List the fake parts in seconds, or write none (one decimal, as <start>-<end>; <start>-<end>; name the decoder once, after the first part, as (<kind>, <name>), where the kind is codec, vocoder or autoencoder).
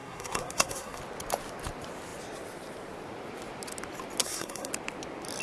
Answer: 0.0-1.0 (codec, SNAC); 4.2-4.7